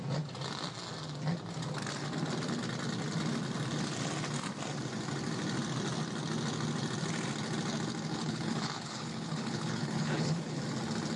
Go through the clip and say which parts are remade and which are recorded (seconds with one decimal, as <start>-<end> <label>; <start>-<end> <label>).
0.0-8.1 recorded; 8.1-10.6 remade; 10.6-11.2 recorded